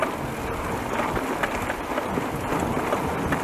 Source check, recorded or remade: recorded